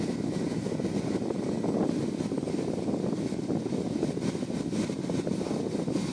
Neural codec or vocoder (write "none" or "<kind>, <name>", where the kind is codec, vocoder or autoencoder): none